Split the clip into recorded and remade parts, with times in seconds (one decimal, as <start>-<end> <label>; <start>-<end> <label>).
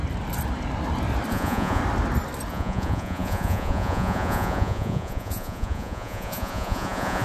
0.0-1.3 recorded; 1.3-1.8 remade; 1.8-2.5 recorded; 2.5-7.2 remade